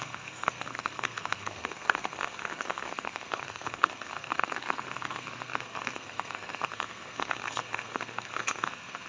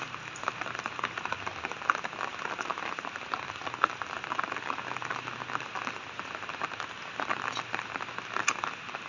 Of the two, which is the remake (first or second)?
first